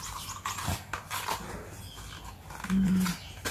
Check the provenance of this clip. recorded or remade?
recorded